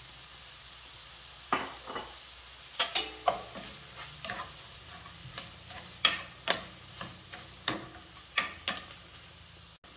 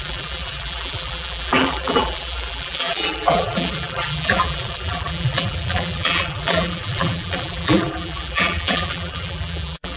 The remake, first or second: second